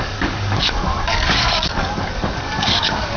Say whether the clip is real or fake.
fake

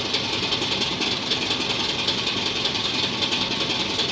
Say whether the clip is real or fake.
real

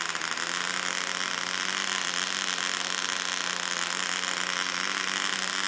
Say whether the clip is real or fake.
real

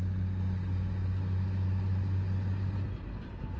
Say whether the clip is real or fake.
real